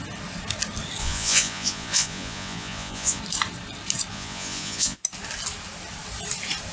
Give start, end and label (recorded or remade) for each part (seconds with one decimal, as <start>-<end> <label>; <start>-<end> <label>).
0.0-1.0 recorded; 1.0-3.2 remade; 3.2-4.1 recorded; 4.1-5.0 remade; 5.0-6.7 recorded